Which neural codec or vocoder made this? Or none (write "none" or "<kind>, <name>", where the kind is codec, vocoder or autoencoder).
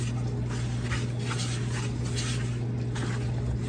none